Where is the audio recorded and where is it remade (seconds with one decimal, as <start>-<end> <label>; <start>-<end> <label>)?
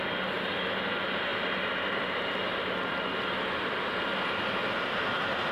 0.0-5.5 recorded